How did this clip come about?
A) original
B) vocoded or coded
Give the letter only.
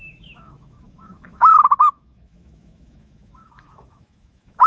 B